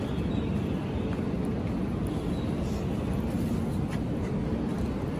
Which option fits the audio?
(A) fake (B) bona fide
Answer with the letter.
B